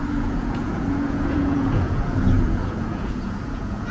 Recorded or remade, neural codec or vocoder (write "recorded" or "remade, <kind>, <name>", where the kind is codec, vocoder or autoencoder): remade, vocoder, Vocos